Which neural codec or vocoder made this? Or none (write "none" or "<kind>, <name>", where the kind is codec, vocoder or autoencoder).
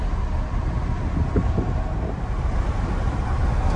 none